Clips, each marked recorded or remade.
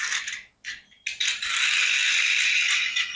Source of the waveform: recorded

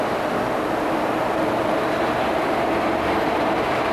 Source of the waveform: recorded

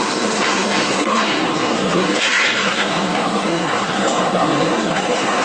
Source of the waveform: remade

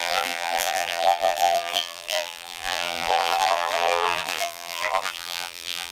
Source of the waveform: remade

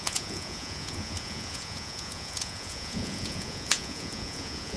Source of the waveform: remade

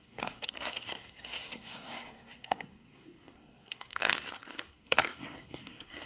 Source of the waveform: remade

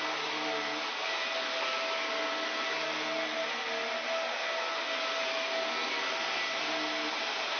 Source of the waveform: recorded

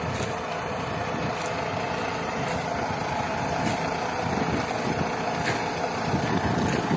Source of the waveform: recorded